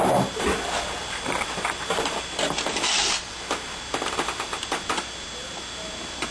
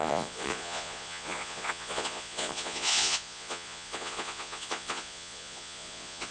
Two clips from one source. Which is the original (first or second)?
first